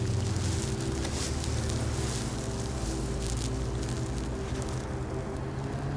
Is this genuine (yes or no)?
yes